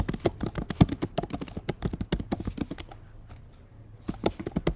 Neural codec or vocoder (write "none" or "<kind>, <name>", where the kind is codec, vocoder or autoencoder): none